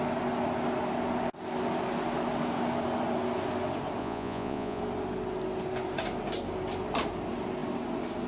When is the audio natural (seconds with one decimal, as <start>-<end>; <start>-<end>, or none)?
0.0-4.0; 4.8-8.3